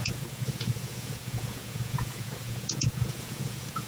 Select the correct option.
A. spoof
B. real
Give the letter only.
A